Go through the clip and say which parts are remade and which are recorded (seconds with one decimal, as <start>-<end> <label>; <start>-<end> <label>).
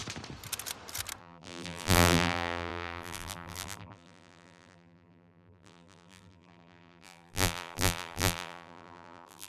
0.0-1.2 recorded; 1.2-9.5 remade